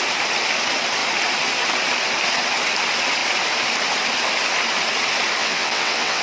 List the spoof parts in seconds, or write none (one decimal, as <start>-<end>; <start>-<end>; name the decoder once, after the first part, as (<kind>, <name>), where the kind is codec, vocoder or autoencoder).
5.4-6.2 (vocoder, WaveNeXt)